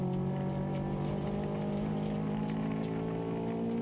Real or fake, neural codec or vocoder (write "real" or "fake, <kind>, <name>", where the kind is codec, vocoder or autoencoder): real